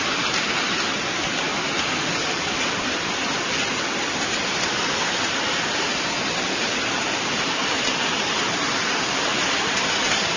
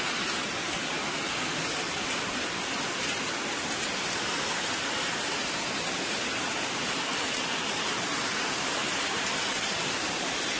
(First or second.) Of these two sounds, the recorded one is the second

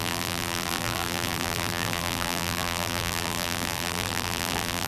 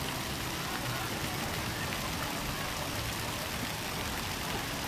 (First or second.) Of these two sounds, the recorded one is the second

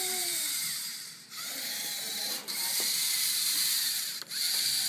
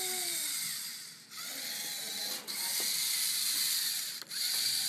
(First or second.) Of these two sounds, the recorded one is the second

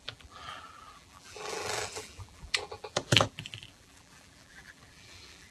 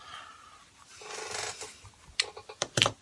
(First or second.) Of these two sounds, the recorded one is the second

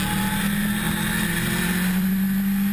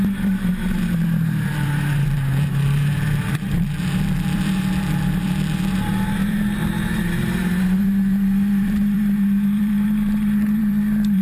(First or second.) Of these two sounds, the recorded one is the first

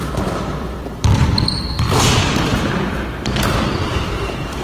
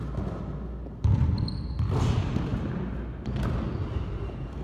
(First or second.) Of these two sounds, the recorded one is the second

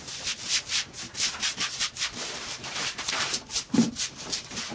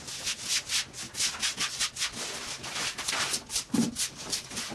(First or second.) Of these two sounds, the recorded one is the second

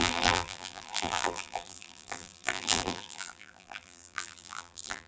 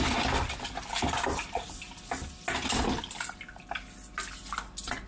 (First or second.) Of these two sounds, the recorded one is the second